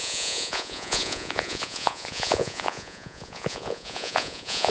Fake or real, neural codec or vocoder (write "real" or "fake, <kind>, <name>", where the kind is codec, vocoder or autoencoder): fake, vocoder, Vocos